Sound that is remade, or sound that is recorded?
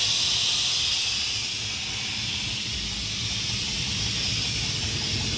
recorded